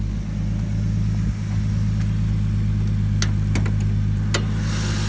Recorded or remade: recorded